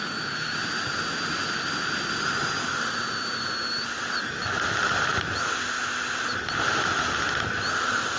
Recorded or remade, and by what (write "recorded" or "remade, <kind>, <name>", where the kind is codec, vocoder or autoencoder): recorded